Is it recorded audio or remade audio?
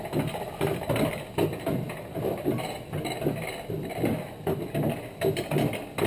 recorded